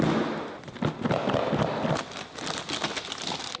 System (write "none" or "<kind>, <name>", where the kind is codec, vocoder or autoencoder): none